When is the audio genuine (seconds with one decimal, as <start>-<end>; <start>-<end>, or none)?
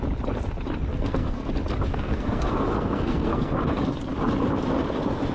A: 0.0-0.9; 1.5-1.9; 3.6-5.3